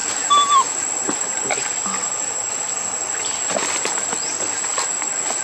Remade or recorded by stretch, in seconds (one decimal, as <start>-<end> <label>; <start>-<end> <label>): 0.0-5.4 recorded